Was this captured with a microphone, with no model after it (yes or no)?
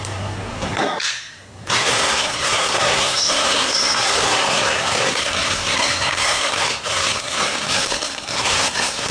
no